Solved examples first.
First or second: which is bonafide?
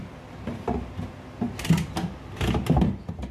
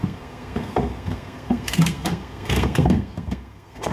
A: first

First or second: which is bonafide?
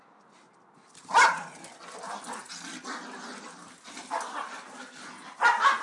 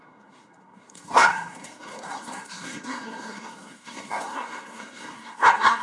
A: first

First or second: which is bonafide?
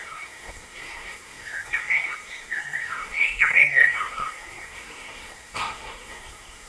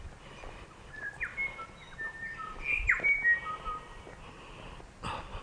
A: second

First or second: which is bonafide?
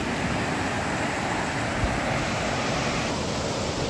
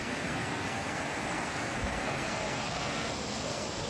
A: first